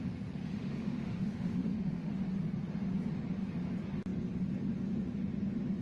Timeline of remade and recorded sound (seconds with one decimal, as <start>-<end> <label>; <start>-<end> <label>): 0.0-0.4 recorded; 0.4-2.1 remade; 2.1-5.8 recorded